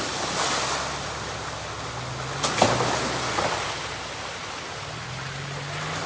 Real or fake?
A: real